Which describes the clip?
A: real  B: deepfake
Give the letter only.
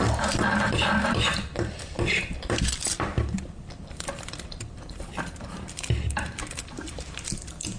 B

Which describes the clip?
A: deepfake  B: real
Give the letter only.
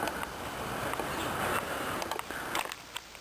B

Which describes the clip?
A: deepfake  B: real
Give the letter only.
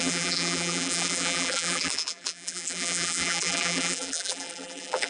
A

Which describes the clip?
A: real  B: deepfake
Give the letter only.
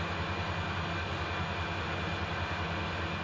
A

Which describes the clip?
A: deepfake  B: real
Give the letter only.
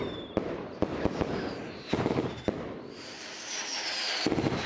B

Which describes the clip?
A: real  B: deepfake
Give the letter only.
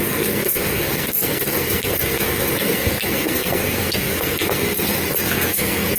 B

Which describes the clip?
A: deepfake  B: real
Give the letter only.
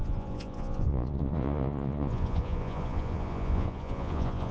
A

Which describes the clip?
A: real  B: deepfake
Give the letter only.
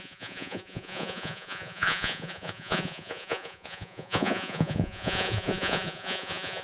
B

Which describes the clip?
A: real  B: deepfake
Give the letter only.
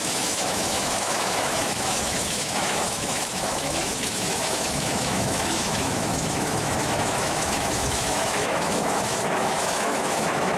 B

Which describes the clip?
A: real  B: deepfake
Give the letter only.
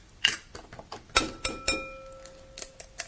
A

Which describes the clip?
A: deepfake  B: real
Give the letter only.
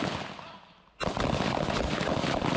B